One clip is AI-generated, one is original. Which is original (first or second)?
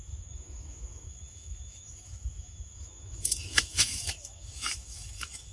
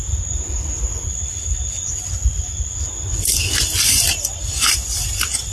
second